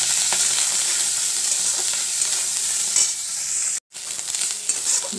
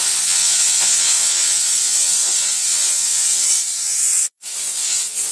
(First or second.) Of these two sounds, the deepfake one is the second